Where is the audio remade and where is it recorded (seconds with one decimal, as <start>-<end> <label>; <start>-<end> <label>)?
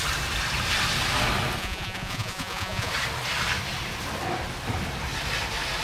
0.0-1.6 recorded; 1.6-2.9 remade; 2.9-5.8 recorded